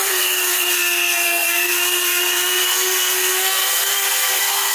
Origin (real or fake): fake